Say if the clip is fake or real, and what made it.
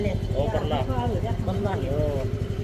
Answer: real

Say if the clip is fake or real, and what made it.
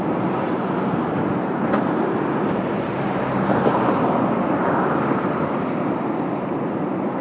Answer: real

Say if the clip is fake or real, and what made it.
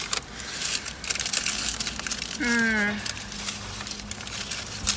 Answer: real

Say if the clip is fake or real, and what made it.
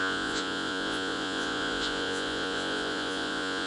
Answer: fake, vocoder, Vocos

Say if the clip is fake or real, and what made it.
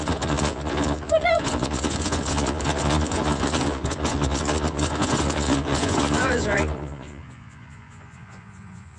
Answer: fake, vocoder, Vocos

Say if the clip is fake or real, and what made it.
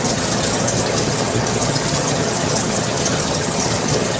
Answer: fake, vocoder, HiFi-GAN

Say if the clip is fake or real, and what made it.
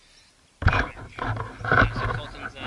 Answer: real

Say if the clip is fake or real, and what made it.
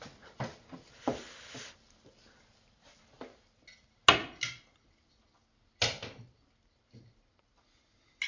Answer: real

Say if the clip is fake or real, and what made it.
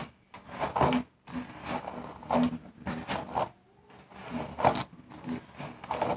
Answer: real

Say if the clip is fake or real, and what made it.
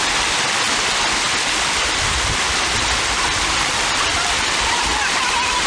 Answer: real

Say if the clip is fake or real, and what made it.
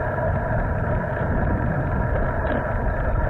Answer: real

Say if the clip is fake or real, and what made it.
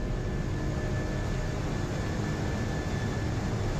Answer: real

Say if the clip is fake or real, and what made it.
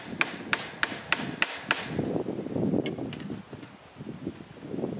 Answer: real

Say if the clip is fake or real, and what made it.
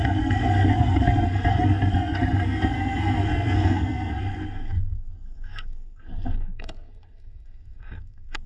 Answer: fake, codec, SNAC